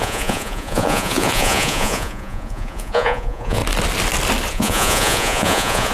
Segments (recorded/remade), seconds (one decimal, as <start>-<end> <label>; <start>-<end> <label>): 0.0-3.6 remade; 3.6-4.5 recorded; 4.5-5.9 remade